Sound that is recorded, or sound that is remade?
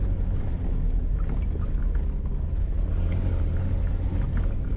recorded